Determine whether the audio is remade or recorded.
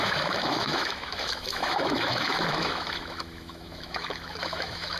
remade